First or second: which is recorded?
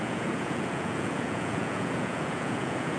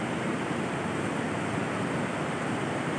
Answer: second